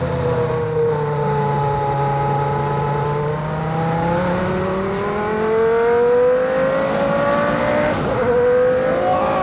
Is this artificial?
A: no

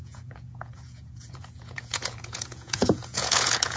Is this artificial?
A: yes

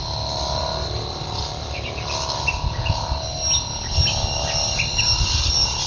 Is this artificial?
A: no